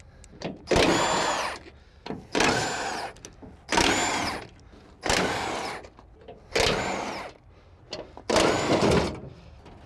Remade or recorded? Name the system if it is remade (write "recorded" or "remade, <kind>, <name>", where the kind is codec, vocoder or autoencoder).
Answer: recorded